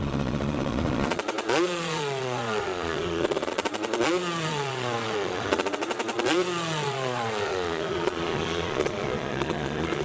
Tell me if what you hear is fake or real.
fake